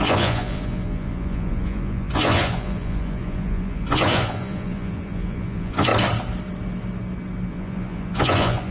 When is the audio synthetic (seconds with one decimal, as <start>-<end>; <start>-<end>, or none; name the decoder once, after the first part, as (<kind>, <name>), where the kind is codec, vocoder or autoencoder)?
0.0-5.9 (vocoder, Vocos); 7.5-8.7